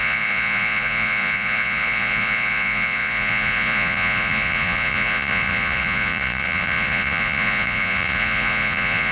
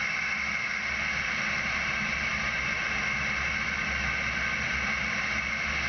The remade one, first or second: first